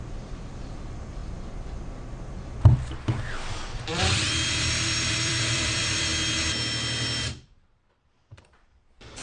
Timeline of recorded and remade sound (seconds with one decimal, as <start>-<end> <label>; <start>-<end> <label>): 0.0-1.2 remade; 1.2-3.6 recorded; 3.6-6.1 remade; 6.1-7.2 recorded; 7.2-9.2 remade